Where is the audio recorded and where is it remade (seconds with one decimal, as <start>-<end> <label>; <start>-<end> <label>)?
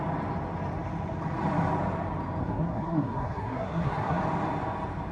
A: 0.0-2.4 recorded; 2.4-4.2 remade; 4.2-5.1 recorded